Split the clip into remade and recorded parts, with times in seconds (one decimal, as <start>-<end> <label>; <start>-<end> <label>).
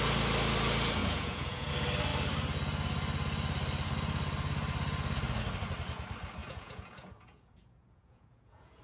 0.0-1.0 recorded; 1.0-1.7 remade; 1.7-6.4 recorded; 6.4-8.8 remade